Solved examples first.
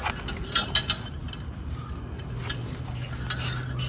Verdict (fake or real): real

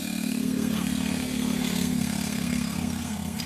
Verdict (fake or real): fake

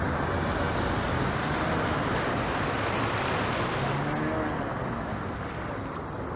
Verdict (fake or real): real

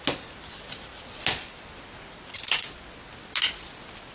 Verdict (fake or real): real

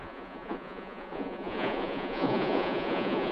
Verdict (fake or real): fake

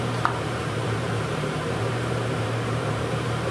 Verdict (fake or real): fake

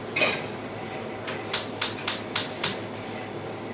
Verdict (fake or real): real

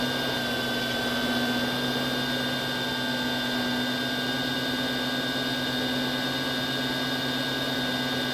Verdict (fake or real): real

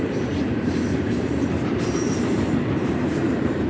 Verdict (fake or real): fake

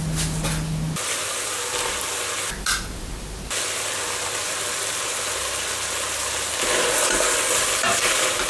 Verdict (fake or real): real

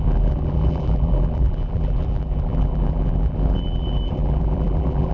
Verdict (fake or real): fake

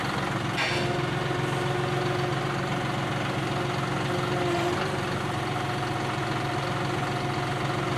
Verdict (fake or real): real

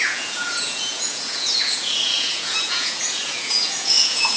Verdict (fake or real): fake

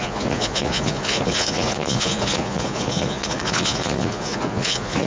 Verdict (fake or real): fake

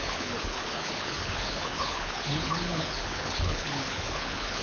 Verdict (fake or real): fake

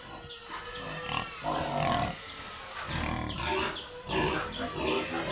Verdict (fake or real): real